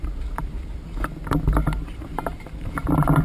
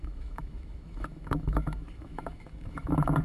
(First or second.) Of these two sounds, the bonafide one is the first